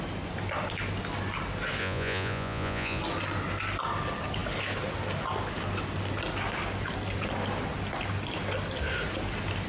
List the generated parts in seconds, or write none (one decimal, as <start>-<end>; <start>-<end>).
1.8-3.0